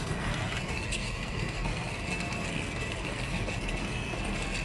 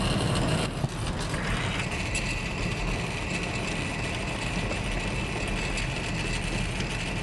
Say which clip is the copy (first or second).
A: first